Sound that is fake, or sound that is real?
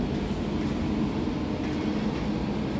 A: real